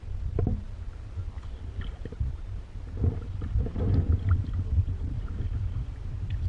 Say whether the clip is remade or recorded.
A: recorded